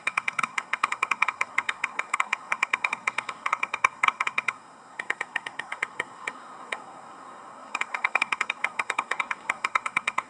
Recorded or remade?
remade